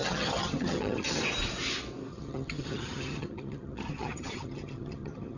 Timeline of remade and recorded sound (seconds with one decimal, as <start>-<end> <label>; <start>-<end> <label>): 0.0-1.2 remade; 1.2-2.1 recorded; 2.1-5.4 remade